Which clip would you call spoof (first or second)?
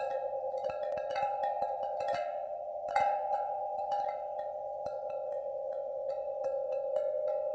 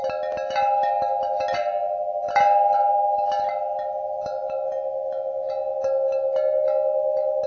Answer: first